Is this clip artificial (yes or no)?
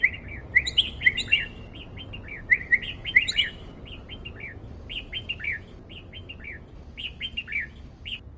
no